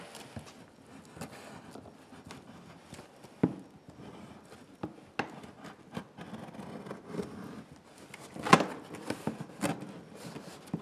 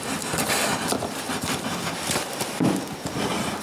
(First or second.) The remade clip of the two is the second